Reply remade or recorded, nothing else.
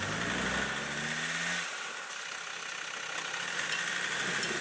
recorded